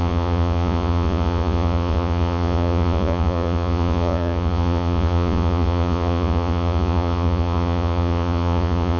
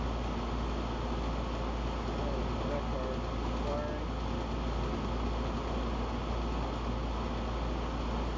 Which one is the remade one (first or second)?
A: first